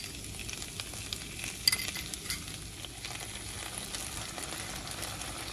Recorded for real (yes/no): yes